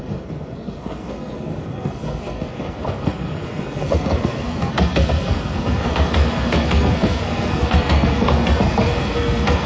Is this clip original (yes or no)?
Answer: no